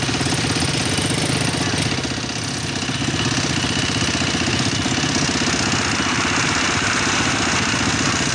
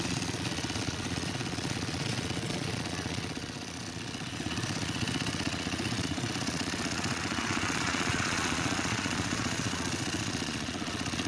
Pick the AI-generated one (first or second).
second